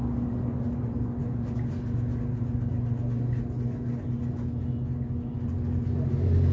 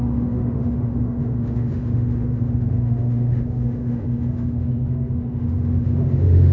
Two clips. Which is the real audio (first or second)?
first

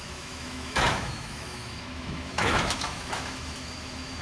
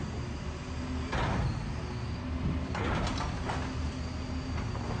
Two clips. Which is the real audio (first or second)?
second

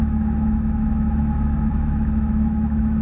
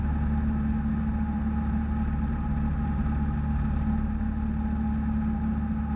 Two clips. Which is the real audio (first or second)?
second